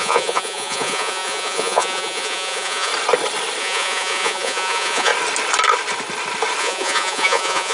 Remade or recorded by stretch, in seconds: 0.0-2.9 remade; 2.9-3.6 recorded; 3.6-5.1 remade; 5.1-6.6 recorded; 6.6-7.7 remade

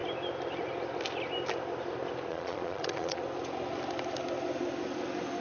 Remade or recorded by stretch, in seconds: 0.0-2.3 recorded; 2.3-3.2 remade; 3.2-5.4 recorded

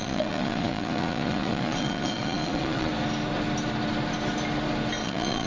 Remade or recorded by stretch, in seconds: 0.0-2.9 remade; 2.9-5.0 recorded; 5.0-5.5 remade

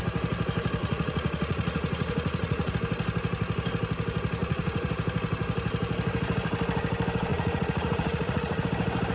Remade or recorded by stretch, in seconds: 0.0-0.8 recorded; 0.8-2.7 remade; 2.7-4.4 recorded; 4.4-4.9 remade; 4.9-7.3 recorded; 7.3-8.6 remade; 8.6-9.1 recorded